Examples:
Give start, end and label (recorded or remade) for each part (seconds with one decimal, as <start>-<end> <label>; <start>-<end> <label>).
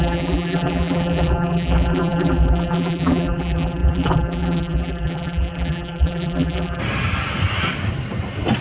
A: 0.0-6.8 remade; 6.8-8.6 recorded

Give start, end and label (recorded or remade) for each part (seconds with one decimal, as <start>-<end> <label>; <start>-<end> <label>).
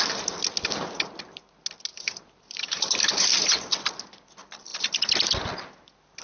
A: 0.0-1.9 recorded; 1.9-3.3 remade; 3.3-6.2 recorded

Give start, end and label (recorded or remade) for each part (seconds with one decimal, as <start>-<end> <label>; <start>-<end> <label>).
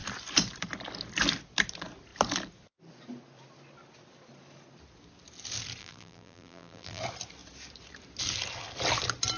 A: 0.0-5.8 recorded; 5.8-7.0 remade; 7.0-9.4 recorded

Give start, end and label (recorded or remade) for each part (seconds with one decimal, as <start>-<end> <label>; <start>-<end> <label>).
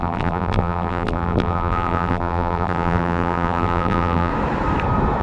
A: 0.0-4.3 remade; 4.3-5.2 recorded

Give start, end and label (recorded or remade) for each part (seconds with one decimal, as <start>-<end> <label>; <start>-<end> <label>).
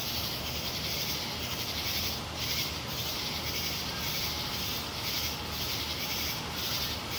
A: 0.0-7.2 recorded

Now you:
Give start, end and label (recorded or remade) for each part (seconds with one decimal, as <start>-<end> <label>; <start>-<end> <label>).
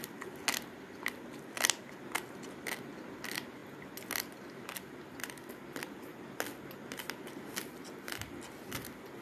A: 0.0-9.2 recorded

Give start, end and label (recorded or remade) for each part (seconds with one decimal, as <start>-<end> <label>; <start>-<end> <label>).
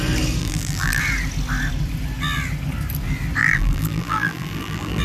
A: 0.0-0.4 recorded; 0.4-1.0 remade; 1.0-3.4 recorded; 3.4-5.0 remade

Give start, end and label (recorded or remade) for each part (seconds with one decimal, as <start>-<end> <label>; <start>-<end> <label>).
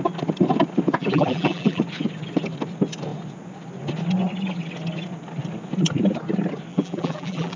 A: 0.0-1.0 recorded; 1.0-1.8 remade; 1.8-6.7 recorded; 6.7-7.6 remade